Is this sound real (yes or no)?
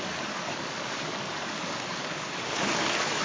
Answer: no